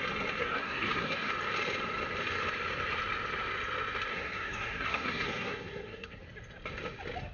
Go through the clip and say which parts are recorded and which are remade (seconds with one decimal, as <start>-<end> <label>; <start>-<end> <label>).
0.0-0.4 recorded; 0.4-1.3 remade; 1.3-4.1 recorded; 4.1-6.2 remade; 6.2-7.3 recorded